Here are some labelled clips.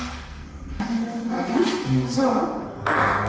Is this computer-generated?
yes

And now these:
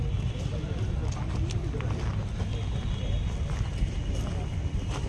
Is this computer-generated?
no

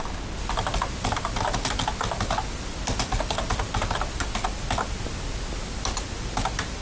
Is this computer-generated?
no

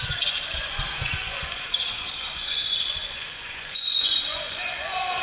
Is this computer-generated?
yes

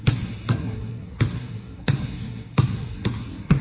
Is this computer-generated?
yes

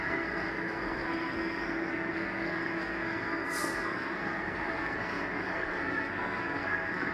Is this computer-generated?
yes